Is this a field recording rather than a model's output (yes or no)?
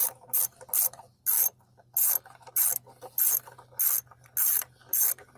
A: yes